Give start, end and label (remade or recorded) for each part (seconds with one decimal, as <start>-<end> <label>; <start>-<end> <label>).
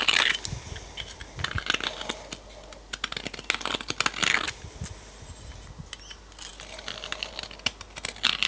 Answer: 0.0-8.5 recorded